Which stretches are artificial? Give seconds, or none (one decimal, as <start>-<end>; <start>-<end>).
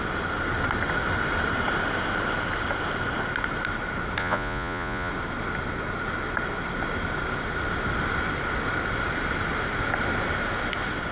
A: 4.2-5.1